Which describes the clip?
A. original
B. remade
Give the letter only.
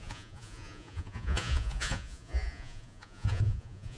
B